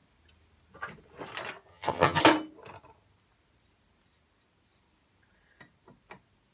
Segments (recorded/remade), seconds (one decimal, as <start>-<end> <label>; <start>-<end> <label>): 0.0-1.7 recorded; 1.7-2.2 remade; 2.2-6.5 recorded